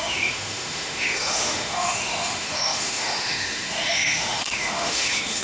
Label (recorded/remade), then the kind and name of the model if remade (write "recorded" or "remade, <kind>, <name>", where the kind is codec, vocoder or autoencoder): remade, autoencoder, DAC-VAE